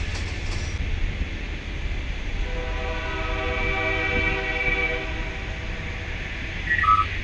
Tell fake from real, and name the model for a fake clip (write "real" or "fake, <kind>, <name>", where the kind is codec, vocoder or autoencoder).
real